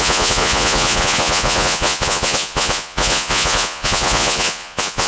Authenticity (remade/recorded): remade